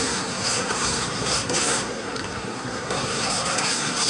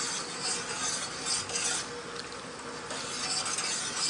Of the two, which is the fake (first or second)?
first